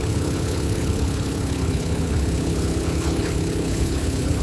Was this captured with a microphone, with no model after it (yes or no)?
no